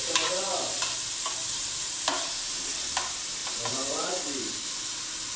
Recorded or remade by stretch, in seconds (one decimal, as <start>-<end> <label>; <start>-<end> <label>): 0.0-3.4 recorded; 3.4-4.4 remade; 4.4-5.4 recorded